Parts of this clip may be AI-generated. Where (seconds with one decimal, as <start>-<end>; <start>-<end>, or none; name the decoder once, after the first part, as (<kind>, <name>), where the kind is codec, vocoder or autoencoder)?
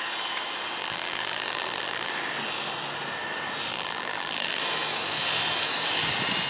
0.8-2.1 (vocoder, BigVGAN v2); 3.7-4.6